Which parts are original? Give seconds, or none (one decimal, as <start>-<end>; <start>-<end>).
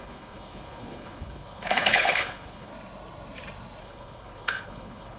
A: 2.7-3.8